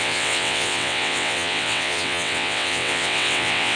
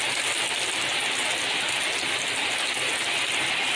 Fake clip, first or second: first